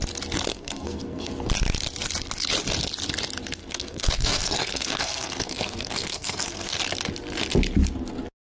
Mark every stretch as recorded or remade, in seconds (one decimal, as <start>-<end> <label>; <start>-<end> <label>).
0.0-0.5 recorded; 0.5-1.3 remade; 1.3-3.6 recorded; 3.6-6.8 remade; 6.8-8.5 recorded